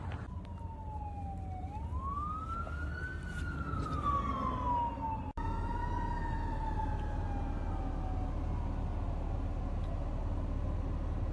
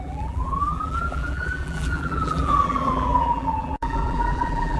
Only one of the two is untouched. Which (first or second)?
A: first